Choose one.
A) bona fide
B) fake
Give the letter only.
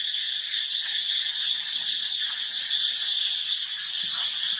A